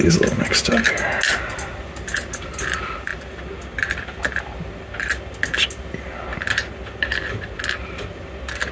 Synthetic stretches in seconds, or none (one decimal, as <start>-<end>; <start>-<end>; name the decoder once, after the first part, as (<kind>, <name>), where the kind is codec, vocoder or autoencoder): none